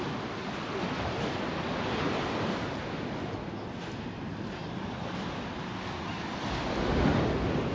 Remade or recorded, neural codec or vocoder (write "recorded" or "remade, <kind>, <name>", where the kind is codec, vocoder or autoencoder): recorded